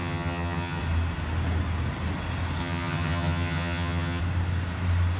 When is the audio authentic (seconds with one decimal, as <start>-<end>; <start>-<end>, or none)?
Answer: 0.8-2.6; 4.2-5.2